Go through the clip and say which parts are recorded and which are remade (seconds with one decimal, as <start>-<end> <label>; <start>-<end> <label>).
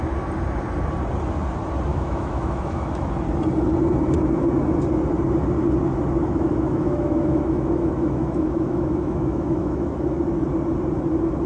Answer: 0.0-1.9 recorded; 1.9-3.1 remade; 3.1-6.2 recorded; 6.2-10.2 remade; 10.2-11.5 recorded